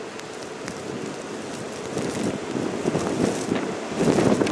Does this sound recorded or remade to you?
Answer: recorded